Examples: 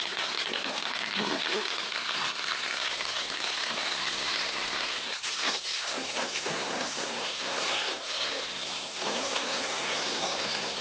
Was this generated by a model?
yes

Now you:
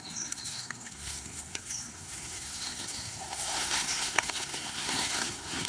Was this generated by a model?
yes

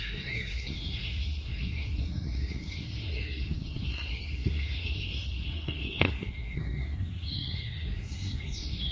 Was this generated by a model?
yes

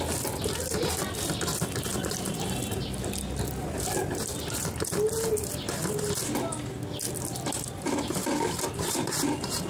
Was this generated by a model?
no